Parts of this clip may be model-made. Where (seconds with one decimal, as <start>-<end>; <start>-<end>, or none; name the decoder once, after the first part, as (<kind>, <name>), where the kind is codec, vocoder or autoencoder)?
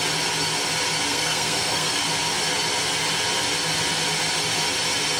1.1-2.0 (codec, SNAC)